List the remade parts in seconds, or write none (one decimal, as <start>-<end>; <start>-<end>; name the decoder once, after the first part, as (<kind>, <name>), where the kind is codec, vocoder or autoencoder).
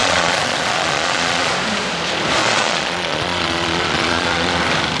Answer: 0.0-1.5 (vocoder, Vocos); 2.4-4.6